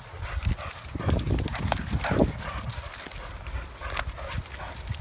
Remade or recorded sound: recorded